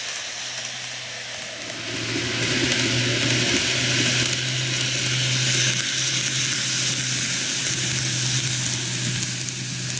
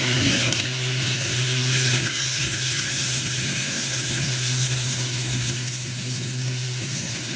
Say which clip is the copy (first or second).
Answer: second